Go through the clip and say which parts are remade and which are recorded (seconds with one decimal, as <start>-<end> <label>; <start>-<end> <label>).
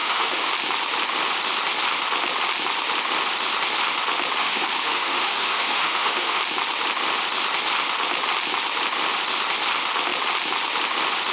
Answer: 0.0-0.5 remade; 0.5-4.4 recorded; 4.4-6.4 remade; 6.4-11.3 recorded